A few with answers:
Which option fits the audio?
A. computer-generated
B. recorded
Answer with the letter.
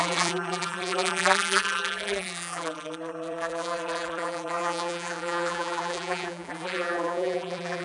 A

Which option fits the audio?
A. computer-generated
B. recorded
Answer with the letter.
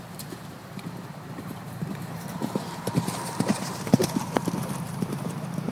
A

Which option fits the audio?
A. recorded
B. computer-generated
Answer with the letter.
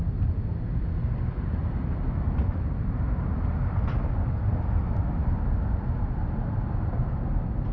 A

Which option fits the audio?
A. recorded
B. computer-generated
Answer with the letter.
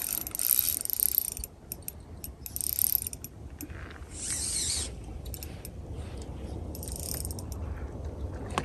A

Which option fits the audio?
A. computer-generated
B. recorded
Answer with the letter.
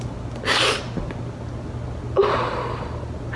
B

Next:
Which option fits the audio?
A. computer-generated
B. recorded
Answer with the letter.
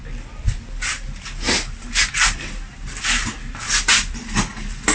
B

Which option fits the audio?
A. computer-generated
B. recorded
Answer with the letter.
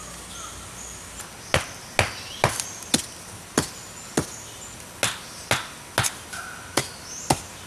B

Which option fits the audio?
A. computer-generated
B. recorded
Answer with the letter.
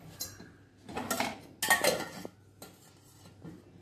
B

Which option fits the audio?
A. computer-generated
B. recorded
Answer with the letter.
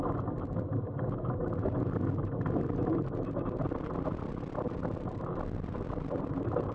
A